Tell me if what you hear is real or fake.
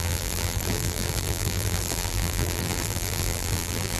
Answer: fake